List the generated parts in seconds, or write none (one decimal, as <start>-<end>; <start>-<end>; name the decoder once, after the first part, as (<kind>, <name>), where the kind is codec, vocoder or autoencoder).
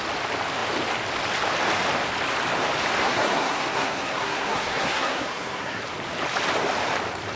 3.0-5.8 (codec, SNAC)